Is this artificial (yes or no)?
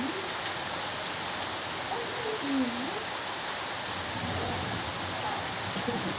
no